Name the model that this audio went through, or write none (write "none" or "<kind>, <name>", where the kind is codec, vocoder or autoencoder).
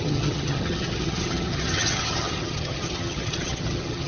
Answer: vocoder, HiFi-GAN